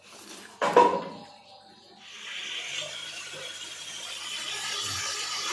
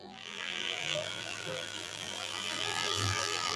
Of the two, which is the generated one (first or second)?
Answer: second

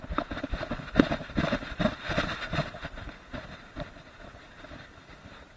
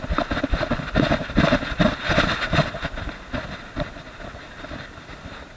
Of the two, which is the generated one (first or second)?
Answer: first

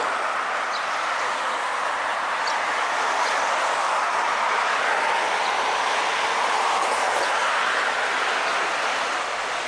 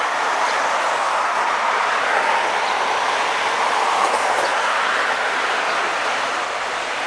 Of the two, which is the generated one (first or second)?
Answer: second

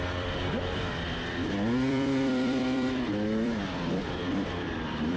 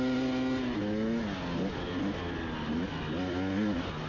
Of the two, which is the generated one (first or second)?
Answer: first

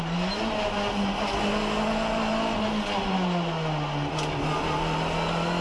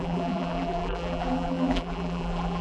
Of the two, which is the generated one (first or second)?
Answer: second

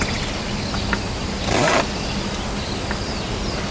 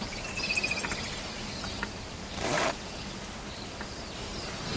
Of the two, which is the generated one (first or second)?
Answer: second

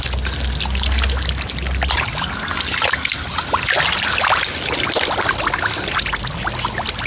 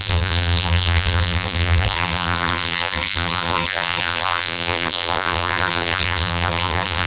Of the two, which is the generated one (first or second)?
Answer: second